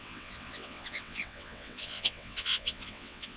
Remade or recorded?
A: remade